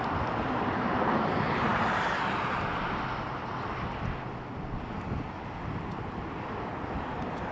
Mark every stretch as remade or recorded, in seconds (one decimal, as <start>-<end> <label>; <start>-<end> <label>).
0.0-7.5 recorded